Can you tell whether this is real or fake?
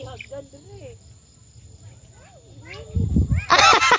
real